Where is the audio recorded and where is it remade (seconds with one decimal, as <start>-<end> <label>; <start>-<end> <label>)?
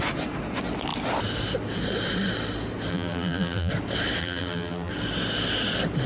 0.0-2.9 recorded; 2.9-3.7 remade; 3.7-4.2 recorded; 4.2-4.9 remade; 4.9-6.1 recorded